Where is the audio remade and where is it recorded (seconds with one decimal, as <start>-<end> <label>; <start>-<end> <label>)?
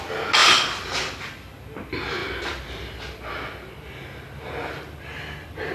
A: 0.0-5.7 recorded